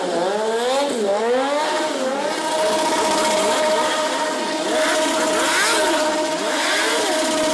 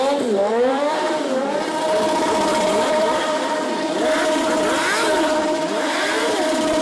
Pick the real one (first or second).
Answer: first